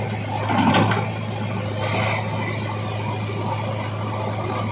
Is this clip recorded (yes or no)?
yes